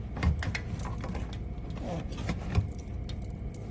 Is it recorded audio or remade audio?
recorded